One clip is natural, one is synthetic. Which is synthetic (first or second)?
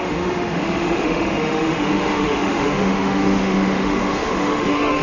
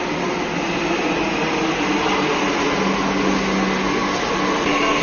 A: first